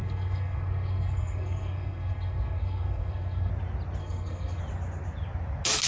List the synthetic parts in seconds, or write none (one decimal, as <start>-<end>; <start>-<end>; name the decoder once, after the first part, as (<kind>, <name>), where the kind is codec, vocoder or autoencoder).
0.0-3.5 (codec, SNAC); 4.0-4.6

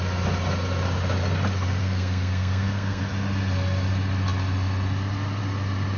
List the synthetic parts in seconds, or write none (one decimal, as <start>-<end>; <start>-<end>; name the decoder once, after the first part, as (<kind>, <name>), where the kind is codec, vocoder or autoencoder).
1.8-3.0 (codec, SNAC)

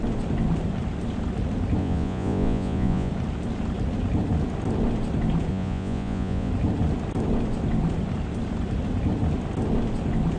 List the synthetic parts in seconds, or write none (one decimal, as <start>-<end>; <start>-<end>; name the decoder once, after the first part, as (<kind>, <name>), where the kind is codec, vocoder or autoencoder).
1.8-3.1 (vocoder, Vocos); 5.5-6.5

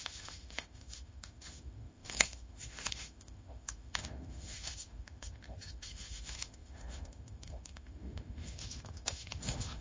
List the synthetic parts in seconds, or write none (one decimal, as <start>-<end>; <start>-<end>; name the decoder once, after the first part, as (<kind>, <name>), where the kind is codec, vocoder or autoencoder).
0.0-9.8 (autoencoder, DAC-VAE)

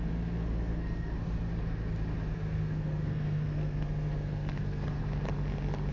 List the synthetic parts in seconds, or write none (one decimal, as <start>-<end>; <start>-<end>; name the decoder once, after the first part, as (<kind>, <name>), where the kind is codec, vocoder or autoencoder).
0.0-1.5 (codec, SNAC); 2.3-5.0

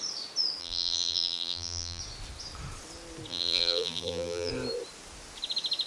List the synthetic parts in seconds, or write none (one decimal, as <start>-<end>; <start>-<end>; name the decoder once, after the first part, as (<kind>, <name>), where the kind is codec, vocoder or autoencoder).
0.6-2.0 (vocoder, BigVGAN v2); 3.3-4.5